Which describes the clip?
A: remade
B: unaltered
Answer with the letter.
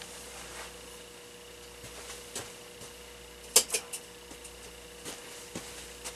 B